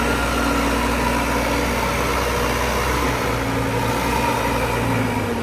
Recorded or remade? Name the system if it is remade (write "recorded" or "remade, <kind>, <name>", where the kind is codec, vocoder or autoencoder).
recorded